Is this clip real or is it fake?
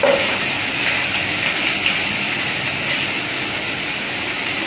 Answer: real